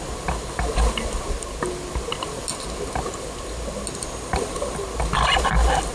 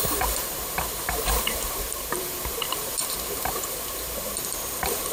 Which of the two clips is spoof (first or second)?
second